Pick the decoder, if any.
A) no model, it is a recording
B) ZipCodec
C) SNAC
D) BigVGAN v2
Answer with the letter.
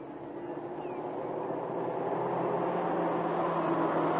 A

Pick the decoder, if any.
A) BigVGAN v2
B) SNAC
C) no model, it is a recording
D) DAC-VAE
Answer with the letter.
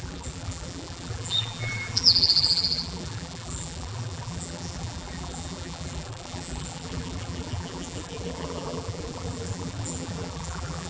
A